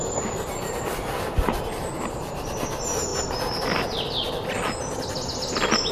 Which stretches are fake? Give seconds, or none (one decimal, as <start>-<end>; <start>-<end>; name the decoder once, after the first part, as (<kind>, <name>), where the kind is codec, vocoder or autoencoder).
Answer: none